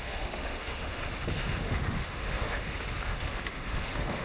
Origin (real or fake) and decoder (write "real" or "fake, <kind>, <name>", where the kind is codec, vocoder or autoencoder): fake, autoencoder, DAC-VAE